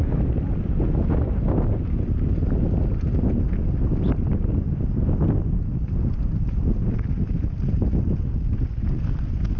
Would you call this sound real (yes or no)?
yes